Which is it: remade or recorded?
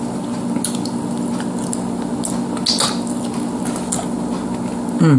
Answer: recorded